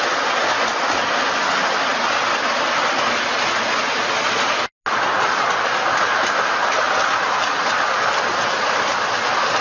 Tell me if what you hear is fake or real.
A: real